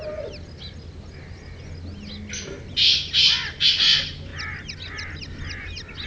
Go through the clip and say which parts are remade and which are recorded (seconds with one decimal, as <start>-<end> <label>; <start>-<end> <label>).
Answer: 0.0-6.1 recorded